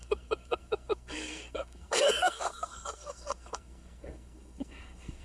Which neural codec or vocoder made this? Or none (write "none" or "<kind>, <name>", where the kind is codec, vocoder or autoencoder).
codec, SNAC